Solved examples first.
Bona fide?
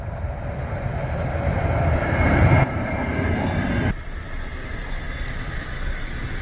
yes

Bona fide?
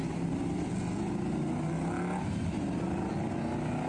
yes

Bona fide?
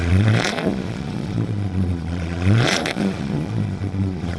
no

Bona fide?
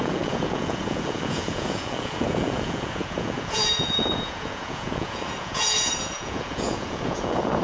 no